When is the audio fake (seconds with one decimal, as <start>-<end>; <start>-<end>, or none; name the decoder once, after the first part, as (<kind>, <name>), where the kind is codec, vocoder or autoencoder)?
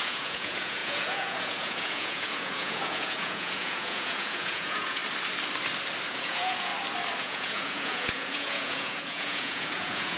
0.0-5.0 (vocoder, Vocos); 6.1-6.7; 7.2-10.2